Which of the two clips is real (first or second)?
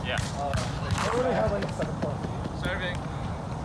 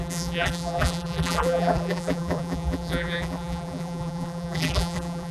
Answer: first